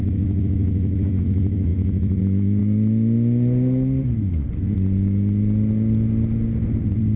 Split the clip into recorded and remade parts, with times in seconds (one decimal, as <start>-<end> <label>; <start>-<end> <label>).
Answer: 0.0-2.6 remade; 2.6-7.2 recorded